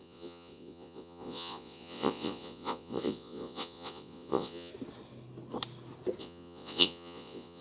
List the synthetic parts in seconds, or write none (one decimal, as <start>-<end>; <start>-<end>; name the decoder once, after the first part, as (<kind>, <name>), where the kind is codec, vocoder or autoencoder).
0.0-4.7 (vocoder, Vocos); 6.2-7.6